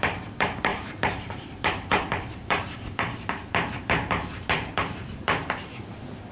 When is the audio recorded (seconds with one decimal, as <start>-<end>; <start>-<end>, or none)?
none